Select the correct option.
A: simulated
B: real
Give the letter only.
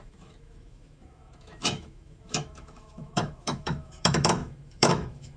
A